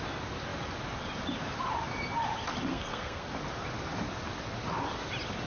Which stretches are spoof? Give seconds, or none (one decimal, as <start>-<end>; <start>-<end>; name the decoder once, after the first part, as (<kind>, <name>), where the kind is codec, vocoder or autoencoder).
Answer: 2.7-3.3 (codec, SNAC)